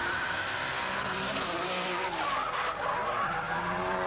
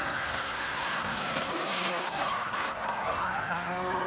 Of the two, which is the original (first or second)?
first